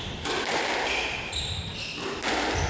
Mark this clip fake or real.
real